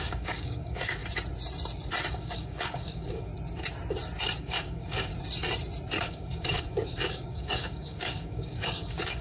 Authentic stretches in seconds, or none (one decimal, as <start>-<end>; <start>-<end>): 1.0-2.1; 3.3-4.4; 5.1-6.0